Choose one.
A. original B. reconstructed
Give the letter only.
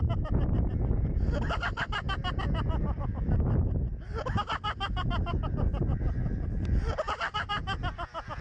A